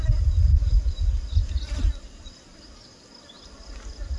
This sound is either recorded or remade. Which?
recorded